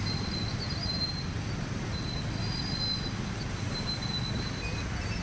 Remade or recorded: recorded